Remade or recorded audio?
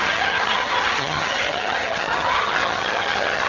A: remade